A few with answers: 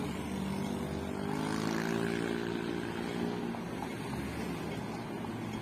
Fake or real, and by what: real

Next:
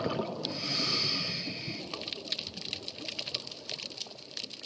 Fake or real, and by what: fake, vocoder, BigVGAN v2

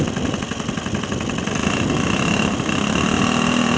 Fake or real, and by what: real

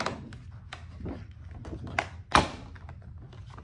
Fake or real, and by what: real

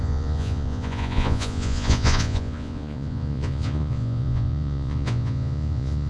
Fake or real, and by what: fake, vocoder, Vocos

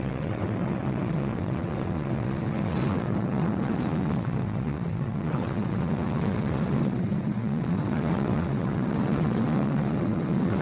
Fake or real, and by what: fake, vocoder, WaveNeXt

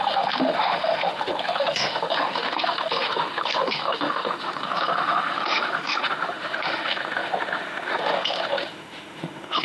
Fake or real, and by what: fake, autoencoder, DAC-VAE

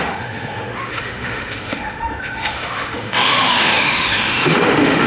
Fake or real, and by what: fake, autoencoder, DAC-VAE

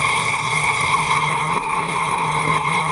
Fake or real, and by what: fake, codec, SNAC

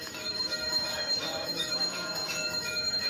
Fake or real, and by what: fake, autoencoder, DAC-VAE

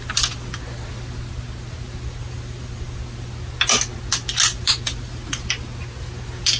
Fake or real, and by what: real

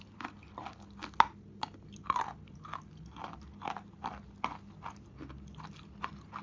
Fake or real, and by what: real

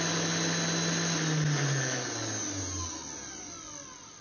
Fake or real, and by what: real